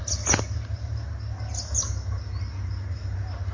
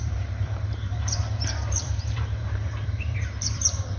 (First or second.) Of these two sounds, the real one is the first